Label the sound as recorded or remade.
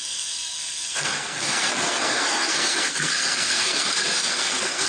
remade